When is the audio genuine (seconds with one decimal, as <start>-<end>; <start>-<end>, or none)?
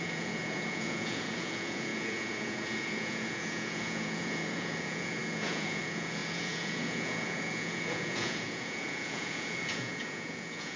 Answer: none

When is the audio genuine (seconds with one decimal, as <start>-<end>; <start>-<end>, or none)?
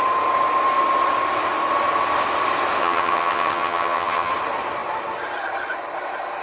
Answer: 0.0-2.8; 4.3-6.4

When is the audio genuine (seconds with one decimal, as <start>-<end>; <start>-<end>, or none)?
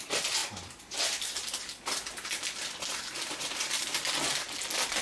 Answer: 0.0-0.4; 1.6-2.9; 4.1-5.0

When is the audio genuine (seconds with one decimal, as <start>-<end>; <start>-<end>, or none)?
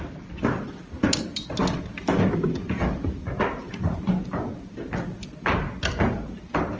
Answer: 0.0-6.8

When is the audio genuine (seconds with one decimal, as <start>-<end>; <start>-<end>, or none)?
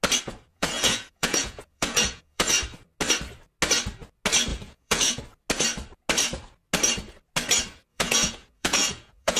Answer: 0.0-0.5; 2.5-4.5; 5.2-7.9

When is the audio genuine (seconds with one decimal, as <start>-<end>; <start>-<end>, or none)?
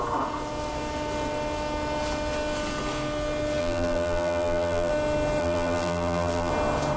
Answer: 0.0-3.6; 4.9-5.4; 6.5-7.0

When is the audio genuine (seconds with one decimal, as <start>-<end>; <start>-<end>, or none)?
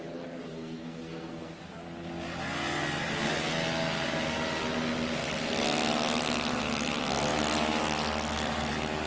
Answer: 0.0-0.5; 1.6-9.1